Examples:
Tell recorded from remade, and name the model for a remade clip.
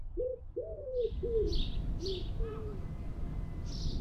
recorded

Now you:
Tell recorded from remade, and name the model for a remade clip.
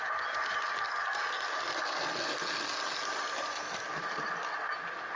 recorded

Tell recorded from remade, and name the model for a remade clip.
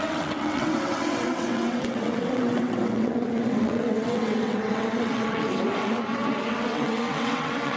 remade, vocoder, WaveNeXt